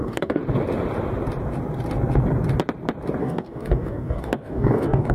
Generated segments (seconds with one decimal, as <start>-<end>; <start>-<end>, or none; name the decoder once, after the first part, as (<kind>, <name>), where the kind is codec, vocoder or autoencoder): 0.0-0.4 (codec, DAC); 3.2-5.1